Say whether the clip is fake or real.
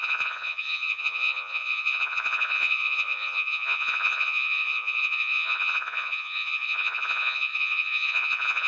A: fake